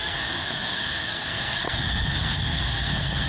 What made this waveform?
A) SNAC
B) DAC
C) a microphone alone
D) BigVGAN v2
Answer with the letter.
A